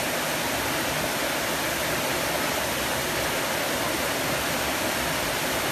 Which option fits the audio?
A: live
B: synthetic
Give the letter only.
A